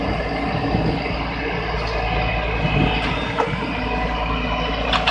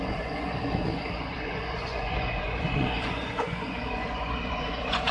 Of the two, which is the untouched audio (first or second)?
first